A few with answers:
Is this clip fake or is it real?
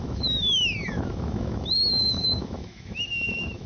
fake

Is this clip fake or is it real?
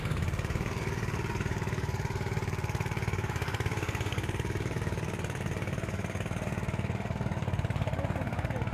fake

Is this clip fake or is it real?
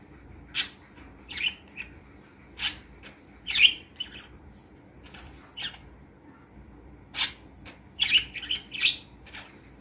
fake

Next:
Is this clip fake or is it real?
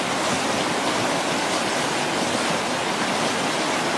real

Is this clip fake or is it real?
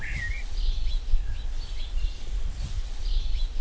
real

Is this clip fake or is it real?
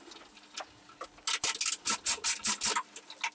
real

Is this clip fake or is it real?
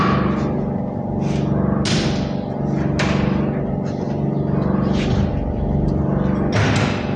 real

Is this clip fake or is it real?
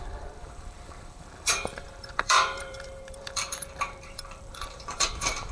fake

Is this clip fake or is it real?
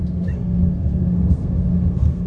fake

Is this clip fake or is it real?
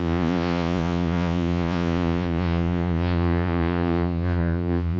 fake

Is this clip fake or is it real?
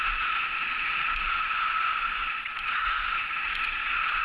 fake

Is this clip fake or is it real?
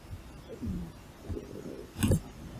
real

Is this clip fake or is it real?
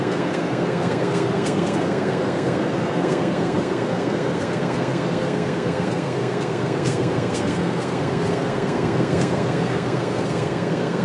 fake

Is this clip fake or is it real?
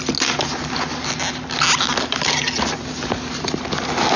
real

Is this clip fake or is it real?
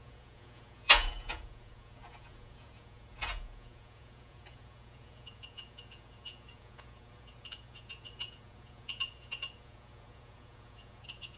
fake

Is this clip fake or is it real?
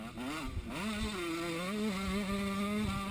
real